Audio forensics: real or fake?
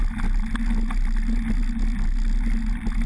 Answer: real